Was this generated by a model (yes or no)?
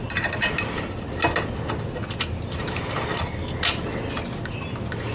no